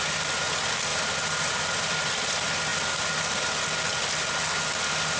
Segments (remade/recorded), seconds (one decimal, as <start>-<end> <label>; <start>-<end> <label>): 0.0-0.9 recorded; 0.9-2.1 remade; 2.1-2.7 recorded; 2.7-3.4 remade; 3.4-5.2 recorded